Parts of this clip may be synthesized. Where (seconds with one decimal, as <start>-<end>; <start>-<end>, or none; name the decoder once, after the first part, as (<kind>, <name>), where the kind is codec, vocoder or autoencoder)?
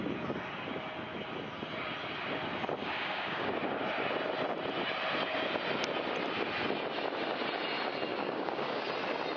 2.8-3.5 (codec, DAC); 8.1-8.9